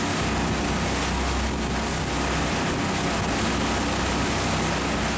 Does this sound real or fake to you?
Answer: real